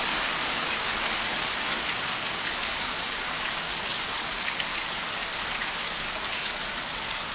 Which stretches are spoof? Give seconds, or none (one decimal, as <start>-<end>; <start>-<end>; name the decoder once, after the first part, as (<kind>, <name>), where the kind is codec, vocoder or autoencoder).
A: 0.0-5.2 (codec, DAC); 5.8-7.3